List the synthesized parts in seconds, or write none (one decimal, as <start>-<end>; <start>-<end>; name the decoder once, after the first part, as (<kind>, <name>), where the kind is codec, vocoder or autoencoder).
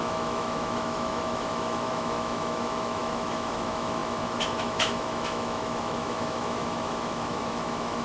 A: 0.0-8.0 (autoencoder, DAC-VAE)